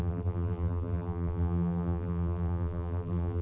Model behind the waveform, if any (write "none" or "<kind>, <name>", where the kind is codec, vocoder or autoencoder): vocoder, BigVGAN v2